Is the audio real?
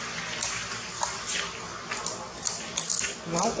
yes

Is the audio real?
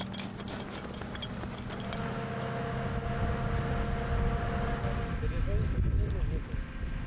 yes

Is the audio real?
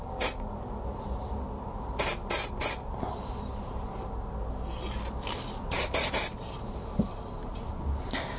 yes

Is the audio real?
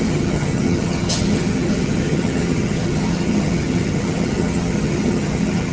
no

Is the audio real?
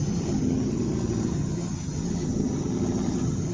no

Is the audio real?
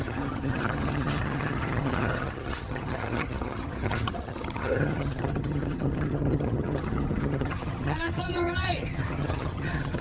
no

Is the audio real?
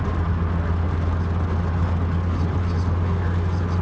yes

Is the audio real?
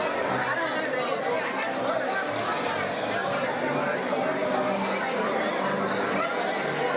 yes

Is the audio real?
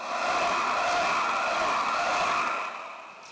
yes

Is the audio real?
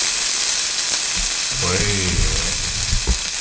yes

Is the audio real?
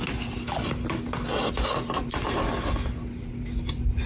yes